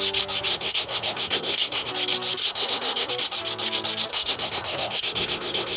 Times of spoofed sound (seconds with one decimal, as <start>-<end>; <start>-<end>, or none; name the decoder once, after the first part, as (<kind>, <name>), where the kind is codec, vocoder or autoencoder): 0.5-1.9 (codec, SNAC); 2.4-3.1; 4.1-5.8